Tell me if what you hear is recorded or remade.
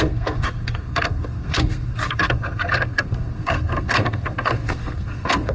remade